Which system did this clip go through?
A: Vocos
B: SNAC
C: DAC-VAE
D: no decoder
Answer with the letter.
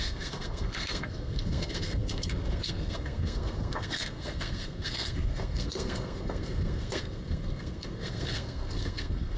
B